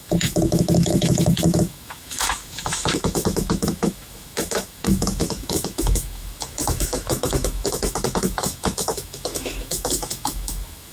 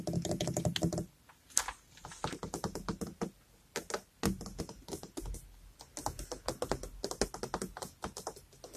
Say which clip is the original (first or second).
second